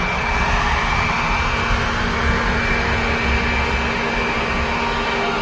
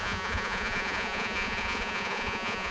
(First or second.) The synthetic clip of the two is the second